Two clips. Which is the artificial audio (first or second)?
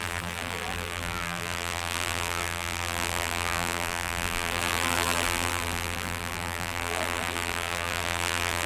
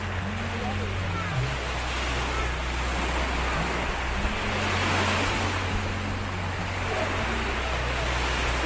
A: first